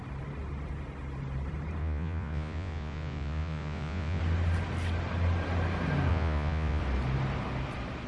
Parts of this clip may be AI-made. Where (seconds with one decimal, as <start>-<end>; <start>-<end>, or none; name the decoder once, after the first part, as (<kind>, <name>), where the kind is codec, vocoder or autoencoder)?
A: 1.8-4.2 (vocoder, Vocos); 6.1-6.8